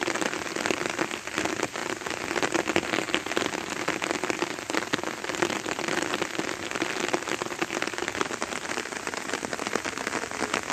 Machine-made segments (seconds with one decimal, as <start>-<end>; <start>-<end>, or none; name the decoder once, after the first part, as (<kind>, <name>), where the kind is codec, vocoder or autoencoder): none